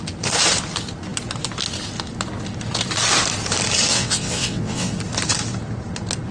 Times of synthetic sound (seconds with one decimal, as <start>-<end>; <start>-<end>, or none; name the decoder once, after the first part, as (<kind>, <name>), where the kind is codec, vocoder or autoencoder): 3.9-4.9 (vocoder, WaveNeXt)